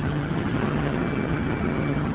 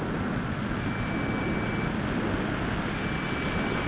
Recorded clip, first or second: second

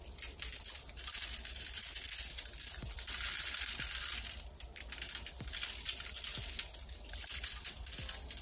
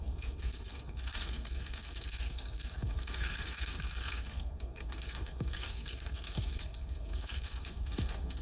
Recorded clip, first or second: first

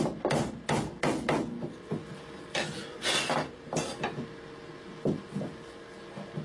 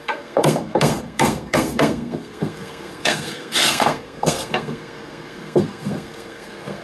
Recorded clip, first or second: first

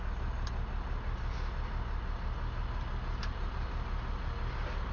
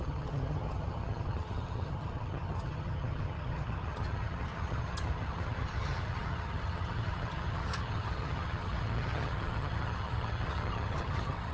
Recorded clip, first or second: first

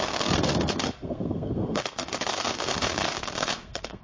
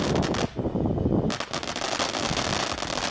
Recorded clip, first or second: second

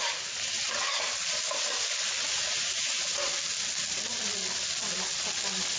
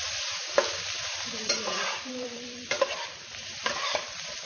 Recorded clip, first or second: first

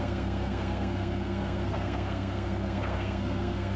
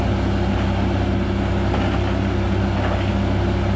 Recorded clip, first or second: second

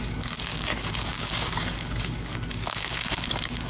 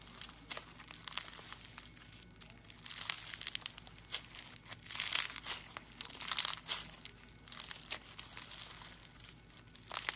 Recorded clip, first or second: second